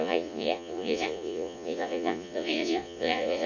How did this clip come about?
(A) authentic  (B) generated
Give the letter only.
B